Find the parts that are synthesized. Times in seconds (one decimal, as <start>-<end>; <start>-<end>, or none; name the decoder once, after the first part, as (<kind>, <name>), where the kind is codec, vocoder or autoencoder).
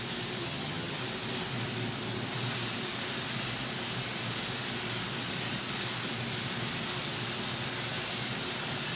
0.4-1.0 (vocoder, HiFi-GAN)